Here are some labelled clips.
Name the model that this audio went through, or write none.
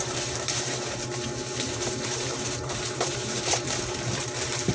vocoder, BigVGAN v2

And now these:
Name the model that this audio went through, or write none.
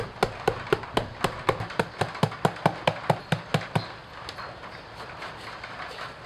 none